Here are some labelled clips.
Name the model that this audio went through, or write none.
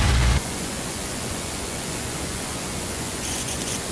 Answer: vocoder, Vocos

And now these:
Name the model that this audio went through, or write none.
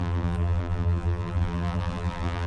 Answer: vocoder, BigVGAN v2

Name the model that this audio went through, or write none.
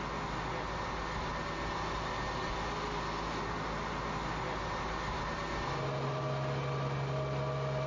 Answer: none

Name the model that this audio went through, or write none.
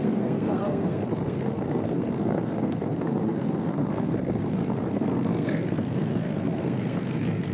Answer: codec, SNAC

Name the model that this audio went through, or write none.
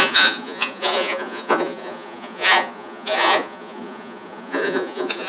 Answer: vocoder, Vocos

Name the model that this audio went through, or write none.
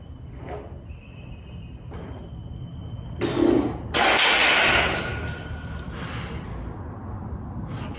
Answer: none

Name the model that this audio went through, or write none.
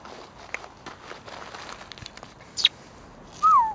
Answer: none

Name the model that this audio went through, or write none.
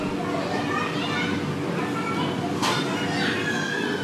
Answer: none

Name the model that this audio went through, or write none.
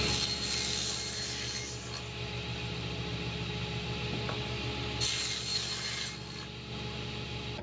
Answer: none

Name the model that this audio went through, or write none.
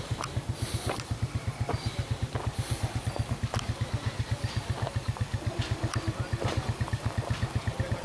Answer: none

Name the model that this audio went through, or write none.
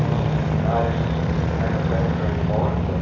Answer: none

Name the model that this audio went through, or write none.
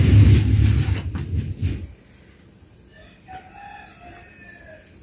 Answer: none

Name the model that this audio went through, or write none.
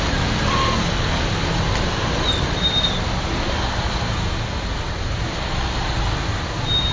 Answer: none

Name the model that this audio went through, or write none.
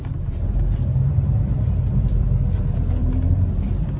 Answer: vocoder, BigVGAN v2